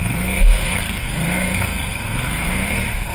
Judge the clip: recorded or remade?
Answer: remade